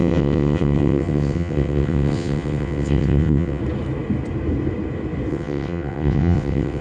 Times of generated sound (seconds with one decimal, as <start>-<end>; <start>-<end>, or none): 0.0-3.6; 5.3-6.8